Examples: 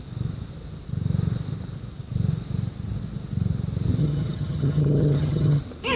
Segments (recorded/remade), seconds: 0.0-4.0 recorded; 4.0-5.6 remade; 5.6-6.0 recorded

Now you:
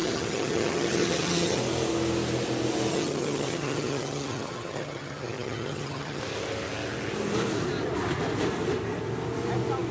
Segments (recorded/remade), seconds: 0.0-1.6 remade; 1.6-2.9 recorded; 2.9-6.2 remade; 6.2-9.9 recorded

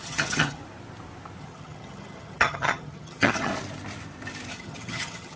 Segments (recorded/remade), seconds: 0.0-0.6 remade; 0.6-1.4 recorded; 1.4-3.5 remade; 3.5-4.5 recorded; 4.5-5.4 remade

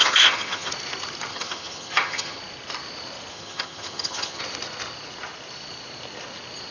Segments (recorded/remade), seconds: 0.0-0.7 remade; 0.7-1.3 recorded; 1.3-2.4 remade; 2.4-3.3 recorded; 3.3-4.4 remade; 4.4-6.7 recorded

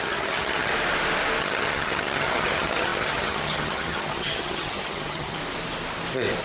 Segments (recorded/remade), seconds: 0.0-0.7 remade; 0.7-1.4 recorded; 1.4-5.4 remade; 5.4-6.4 recorded

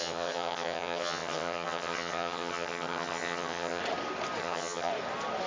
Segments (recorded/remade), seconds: 0.0-3.8 remade; 3.8-4.4 recorded; 4.4-4.9 remade; 4.9-5.5 recorded

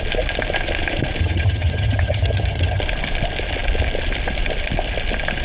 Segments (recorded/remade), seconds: 0.0-1.2 recorded; 1.2-2.8 remade; 2.8-5.4 recorded

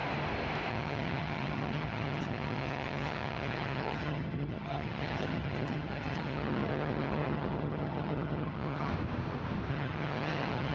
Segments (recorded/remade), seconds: 0.0-0.7 recorded; 0.7-8.9 remade; 8.9-9.7 recorded; 9.7-10.7 remade